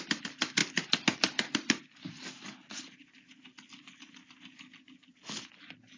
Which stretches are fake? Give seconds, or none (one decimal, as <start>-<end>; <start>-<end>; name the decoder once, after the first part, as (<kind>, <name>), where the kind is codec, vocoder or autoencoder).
none